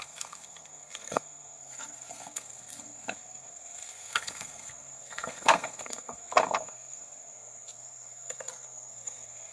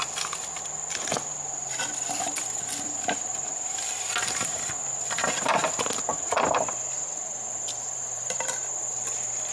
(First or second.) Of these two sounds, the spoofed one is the first